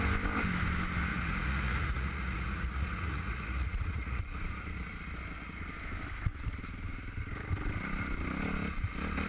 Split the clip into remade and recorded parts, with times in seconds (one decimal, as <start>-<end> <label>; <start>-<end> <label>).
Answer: 0.0-1.1 recorded; 1.1-4.2 remade; 4.2-9.3 recorded